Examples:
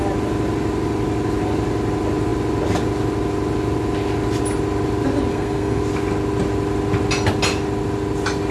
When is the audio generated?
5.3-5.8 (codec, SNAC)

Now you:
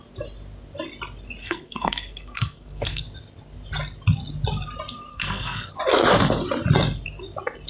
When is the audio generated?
1.4-3.0 (codec, SNAC); 5.1-5.7

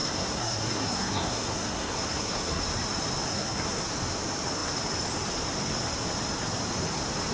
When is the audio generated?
0.0-2.6 (codec, SNAC); 3.3-3.9

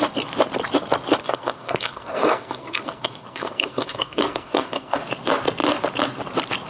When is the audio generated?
1.2-5.0 (codec, SNAC)